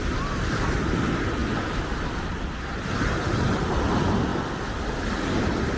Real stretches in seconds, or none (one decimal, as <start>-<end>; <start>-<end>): 0.0-5.8